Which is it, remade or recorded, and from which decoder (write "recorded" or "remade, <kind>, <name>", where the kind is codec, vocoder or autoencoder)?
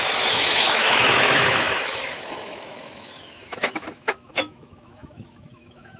remade, autoencoder, DAC-VAE